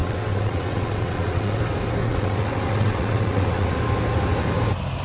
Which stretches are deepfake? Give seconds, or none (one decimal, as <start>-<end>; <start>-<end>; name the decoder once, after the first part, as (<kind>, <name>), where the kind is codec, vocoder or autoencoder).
0.0-1.6 (vocoder, WaveNeXt); 2.0-3.8